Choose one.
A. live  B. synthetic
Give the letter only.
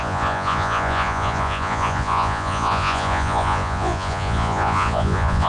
B